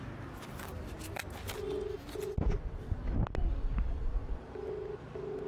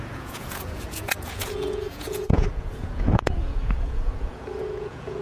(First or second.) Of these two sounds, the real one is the first